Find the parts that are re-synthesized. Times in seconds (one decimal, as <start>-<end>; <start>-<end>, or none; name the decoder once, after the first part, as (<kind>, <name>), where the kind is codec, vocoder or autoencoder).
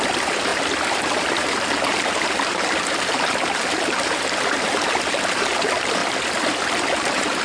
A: 0.0-6.0 (vocoder, BigVGAN v2); 6.6-7.4